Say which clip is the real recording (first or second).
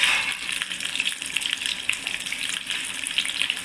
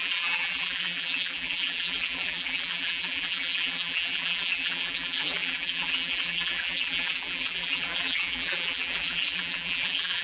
first